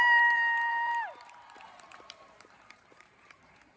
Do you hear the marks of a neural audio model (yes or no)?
yes